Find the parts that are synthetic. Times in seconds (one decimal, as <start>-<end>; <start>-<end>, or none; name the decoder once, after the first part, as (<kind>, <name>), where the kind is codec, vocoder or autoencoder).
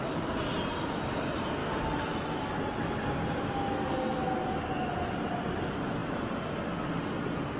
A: none